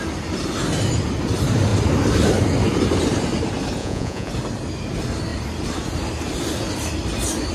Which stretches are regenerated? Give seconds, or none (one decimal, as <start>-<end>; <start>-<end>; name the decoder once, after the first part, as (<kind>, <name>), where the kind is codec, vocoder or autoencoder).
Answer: 3.8-4.3 (vocoder, Vocos)